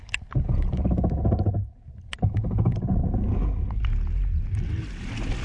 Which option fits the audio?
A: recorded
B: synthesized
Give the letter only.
A